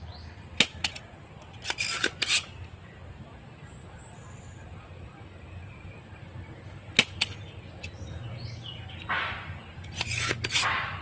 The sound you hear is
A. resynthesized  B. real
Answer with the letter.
B